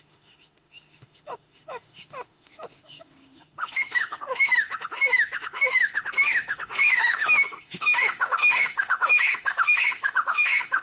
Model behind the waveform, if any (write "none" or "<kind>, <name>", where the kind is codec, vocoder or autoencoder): autoencoder, DAC-VAE